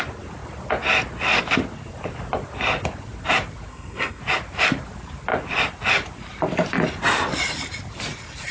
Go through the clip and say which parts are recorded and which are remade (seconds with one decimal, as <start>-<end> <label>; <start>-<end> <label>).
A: 0.0-3.7 recorded; 3.7-4.2 remade; 4.2-8.5 recorded